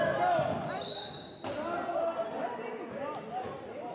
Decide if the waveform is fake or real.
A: real